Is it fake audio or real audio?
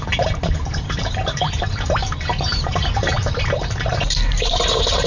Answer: fake